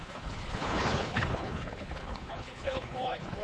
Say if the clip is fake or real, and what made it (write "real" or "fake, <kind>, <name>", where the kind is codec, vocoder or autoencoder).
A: fake, codec, HILCodec